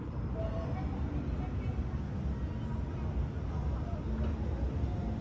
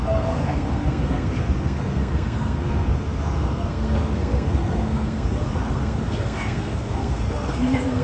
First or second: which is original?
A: first